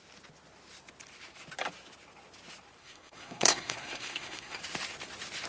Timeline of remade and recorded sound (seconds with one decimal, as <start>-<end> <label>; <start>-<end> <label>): 0.0-2.8 recorded; 2.8-4.6 remade; 4.6-5.5 recorded